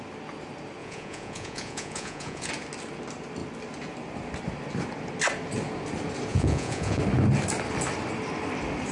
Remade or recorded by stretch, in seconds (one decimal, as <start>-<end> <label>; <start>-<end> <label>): 0.0-0.8 recorded; 0.8-2.5 remade; 2.5-6.3 recorded; 6.3-7.0 remade; 7.0-8.9 recorded